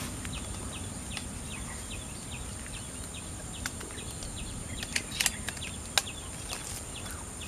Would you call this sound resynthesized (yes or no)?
no